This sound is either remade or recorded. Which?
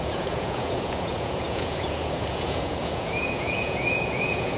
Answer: remade